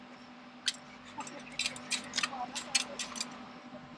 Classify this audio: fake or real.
real